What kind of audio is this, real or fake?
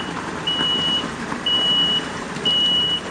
fake